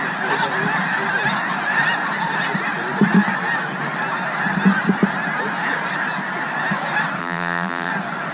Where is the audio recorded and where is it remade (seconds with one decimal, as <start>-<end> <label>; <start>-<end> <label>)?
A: 0.0-7.2 recorded; 7.2-7.9 remade; 7.9-8.3 recorded